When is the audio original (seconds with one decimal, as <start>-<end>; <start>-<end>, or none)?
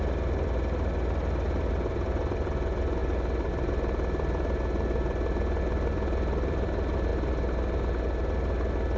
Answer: 0.0-1.7; 7.1-9.0